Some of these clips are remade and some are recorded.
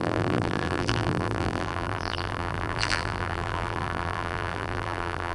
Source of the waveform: remade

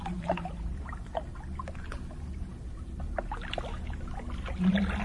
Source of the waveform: recorded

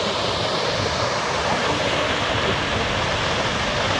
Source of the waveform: recorded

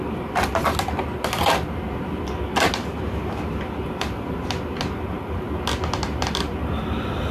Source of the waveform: recorded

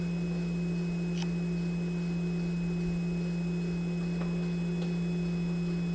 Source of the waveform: recorded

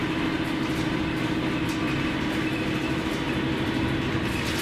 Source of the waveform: recorded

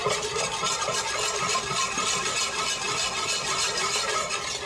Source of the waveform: recorded